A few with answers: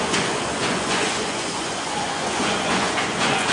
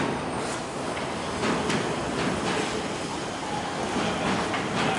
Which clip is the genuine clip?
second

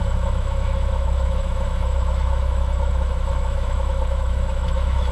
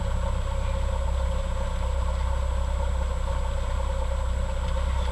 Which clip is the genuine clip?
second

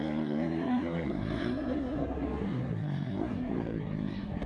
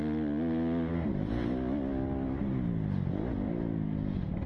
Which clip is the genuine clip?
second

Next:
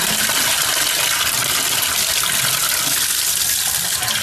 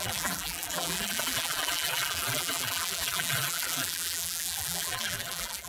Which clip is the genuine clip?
first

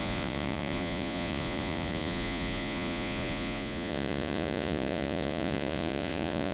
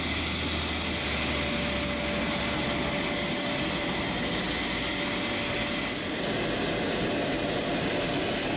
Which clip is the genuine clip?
second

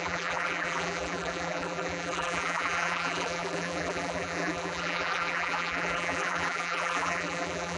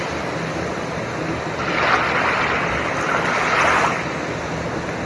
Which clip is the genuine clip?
second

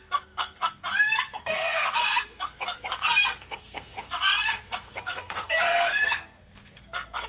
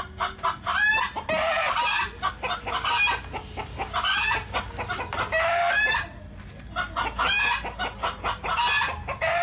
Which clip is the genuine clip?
second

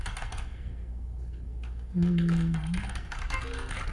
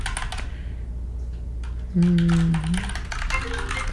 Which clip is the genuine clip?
second